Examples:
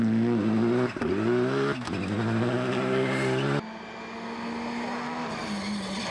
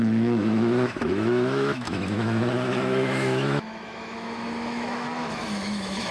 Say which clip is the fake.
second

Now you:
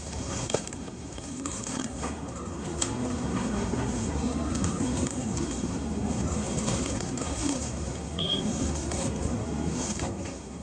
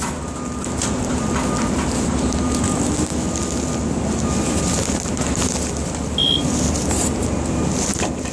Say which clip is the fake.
first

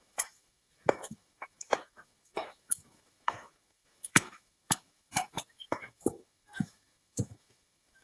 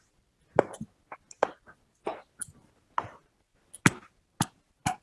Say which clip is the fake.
first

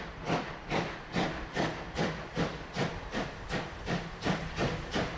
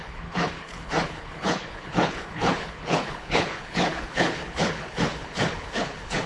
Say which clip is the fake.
second